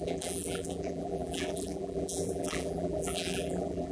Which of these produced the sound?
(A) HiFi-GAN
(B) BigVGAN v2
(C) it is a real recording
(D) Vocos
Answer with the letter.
B